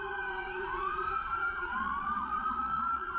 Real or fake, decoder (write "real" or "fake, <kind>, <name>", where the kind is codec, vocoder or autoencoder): fake, vocoder, Vocos